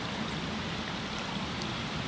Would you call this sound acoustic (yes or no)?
yes